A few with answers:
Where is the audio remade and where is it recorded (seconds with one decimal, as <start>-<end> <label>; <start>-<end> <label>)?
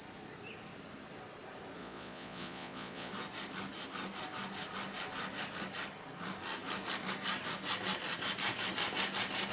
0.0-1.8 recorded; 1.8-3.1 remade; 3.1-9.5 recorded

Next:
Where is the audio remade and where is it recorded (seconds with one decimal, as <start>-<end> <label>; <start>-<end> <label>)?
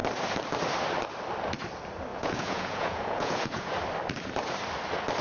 0.0-2.1 recorded; 2.1-3.7 remade; 3.7-5.2 recorded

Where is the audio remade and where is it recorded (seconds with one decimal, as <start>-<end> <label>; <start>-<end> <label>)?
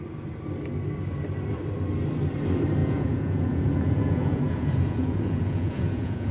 0.0-2.8 recorded; 2.8-6.3 remade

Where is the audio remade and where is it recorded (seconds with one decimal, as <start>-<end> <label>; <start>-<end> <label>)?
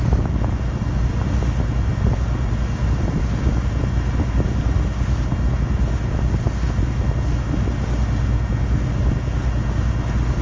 0.0-10.4 recorded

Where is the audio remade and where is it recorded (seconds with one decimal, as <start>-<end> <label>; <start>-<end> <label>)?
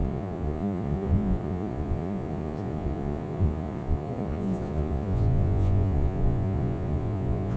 0.0-7.6 remade